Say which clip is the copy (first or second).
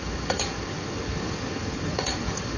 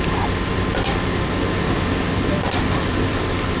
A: first